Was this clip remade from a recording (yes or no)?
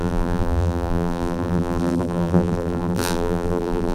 yes